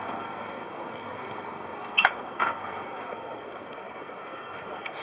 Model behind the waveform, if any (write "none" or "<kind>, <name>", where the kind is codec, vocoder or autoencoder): codec, SNAC